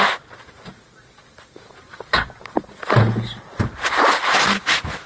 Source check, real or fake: real